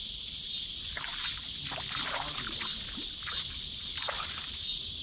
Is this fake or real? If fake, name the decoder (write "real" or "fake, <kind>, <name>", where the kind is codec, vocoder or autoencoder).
real